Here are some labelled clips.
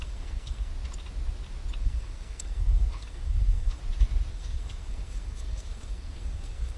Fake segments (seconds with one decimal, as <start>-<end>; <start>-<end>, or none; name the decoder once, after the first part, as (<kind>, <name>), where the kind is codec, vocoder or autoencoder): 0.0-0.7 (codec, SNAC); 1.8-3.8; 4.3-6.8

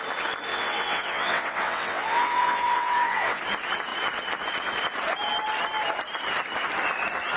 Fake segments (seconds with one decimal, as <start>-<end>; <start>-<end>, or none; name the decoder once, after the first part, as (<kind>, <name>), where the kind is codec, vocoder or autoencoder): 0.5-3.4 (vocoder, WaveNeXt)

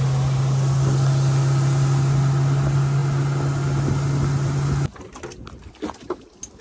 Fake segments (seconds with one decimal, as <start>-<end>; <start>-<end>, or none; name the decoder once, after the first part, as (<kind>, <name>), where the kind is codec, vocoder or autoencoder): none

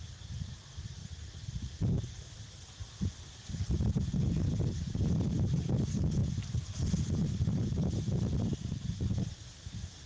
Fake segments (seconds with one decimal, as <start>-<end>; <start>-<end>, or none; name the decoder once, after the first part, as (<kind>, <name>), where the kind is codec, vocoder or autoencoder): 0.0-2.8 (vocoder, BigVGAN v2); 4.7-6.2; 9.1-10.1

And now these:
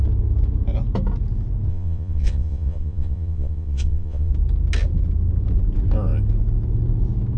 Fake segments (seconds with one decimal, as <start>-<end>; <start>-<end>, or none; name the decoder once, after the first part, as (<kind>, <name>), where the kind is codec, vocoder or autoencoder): 1.7-4.3 (vocoder, Vocos)

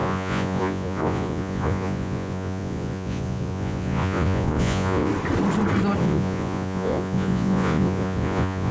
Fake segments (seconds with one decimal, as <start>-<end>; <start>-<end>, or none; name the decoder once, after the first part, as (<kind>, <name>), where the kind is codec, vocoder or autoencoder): 0.0-5.1 (vocoder, Vocos); 6.0-8.7

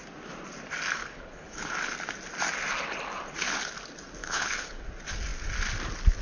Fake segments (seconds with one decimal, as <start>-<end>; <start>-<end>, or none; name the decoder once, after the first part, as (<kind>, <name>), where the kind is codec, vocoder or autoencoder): 1.0-1.7 (codec, HILCodec); 4.2-4.8